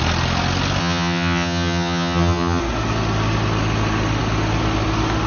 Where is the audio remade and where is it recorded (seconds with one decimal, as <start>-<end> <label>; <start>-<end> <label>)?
0.0-0.8 recorded; 0.8-2.6 remade; 2.6-5.3 recorded